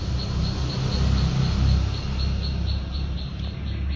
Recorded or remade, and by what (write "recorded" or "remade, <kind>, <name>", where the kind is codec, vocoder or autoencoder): recorded